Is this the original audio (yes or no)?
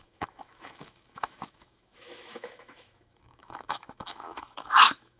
no